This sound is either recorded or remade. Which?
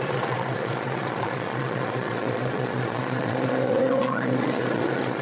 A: remade